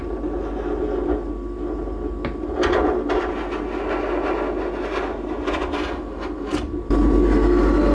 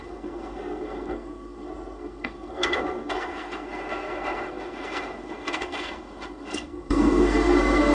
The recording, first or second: first